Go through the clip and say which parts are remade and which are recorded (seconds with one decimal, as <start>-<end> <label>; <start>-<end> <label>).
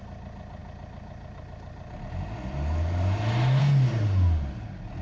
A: 0.0-5.0 recorded